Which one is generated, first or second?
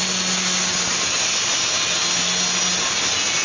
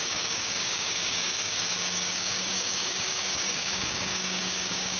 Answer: second